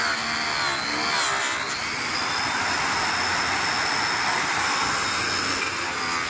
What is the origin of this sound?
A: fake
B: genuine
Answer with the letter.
B